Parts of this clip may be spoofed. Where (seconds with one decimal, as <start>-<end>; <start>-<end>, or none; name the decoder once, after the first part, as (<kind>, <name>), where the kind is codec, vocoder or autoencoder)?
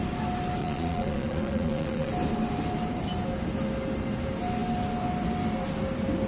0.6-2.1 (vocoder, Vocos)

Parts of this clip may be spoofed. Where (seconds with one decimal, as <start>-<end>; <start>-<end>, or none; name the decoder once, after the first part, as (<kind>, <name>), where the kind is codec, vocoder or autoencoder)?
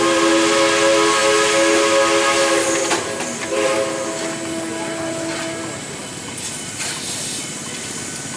none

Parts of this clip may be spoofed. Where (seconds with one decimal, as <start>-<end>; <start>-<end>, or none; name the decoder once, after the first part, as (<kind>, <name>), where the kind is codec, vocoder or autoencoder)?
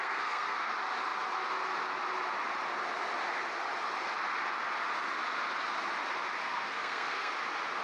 0.0-0.7 (codec, SNAC); 6.4-7.3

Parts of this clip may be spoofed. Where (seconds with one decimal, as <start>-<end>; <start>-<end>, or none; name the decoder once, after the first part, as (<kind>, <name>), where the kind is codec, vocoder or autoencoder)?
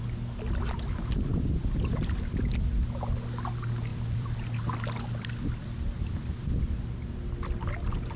1.3-2.3 (vocoder, BigVGAN v2); 3.9-4.6